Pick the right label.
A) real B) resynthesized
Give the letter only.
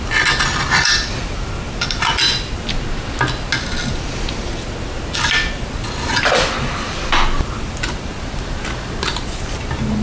A